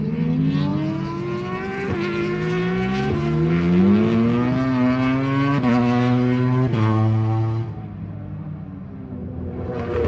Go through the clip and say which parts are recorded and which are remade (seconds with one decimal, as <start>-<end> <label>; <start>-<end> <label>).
0.0-10.1 recorded